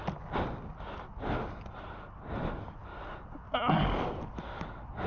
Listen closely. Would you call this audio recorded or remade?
recorded